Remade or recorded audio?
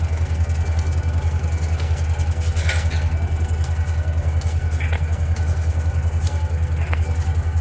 remade